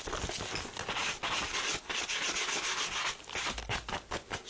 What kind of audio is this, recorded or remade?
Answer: recorded